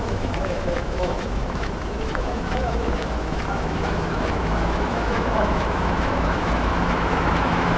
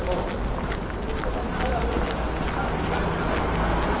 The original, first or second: second